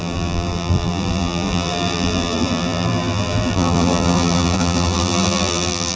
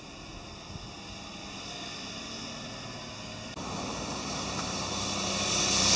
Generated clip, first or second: first